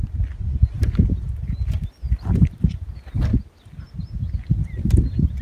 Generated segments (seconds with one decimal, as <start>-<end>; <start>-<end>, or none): none